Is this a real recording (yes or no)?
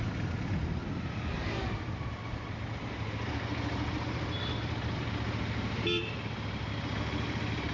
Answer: yes